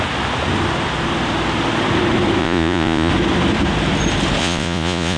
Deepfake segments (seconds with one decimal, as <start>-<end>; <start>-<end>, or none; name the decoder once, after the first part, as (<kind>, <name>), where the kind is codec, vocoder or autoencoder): 2.4-3.1 (vocoder, Vocos); 4.4-5.2